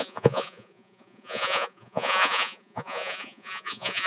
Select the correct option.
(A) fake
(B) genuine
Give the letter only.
A